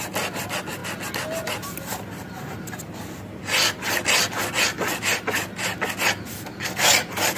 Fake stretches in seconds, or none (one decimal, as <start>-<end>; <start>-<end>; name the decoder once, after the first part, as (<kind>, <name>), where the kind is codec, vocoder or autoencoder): 6.5-7.4 (vocoder, BigVGAN v2)